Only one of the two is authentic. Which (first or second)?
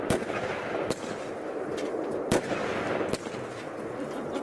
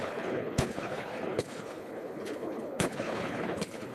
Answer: first